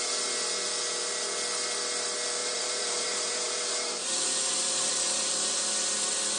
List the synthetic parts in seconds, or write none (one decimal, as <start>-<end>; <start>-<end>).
2.4-4.9